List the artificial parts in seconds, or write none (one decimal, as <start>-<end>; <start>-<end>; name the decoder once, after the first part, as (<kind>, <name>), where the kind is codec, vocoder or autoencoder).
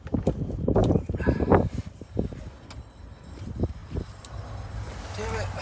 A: 0.8-1.8 (vocoder, BigVGAN v2); 3.8-4.4